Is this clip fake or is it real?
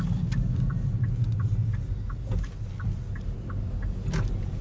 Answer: real